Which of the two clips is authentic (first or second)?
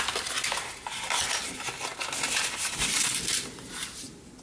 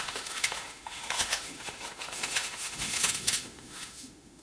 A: first